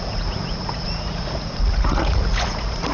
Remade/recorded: remade